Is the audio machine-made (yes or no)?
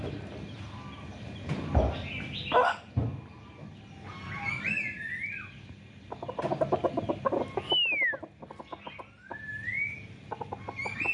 no